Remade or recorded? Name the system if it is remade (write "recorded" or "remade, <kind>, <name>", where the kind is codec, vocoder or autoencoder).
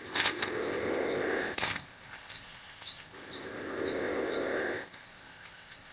remade, codec, ZipCodec